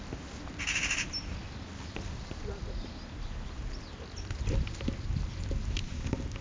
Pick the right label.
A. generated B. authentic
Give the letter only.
B